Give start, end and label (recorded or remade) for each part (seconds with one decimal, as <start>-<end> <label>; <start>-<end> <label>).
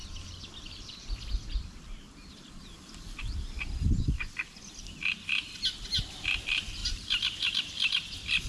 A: 0.0-4.6 remade; 4.6-6.8 recorded; 6.8-7.4 remade; 7.4-8.5 recorded